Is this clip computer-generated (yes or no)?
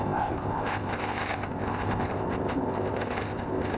yes